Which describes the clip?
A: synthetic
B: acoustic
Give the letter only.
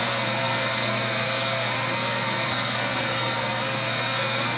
A